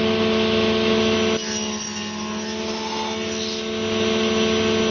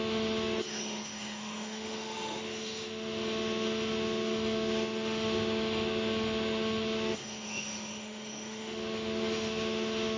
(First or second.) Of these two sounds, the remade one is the second